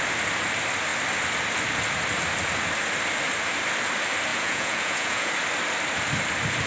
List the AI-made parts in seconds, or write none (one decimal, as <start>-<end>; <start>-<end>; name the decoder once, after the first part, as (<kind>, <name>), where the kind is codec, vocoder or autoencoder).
4.3-5.3 (vocoder, Vocos)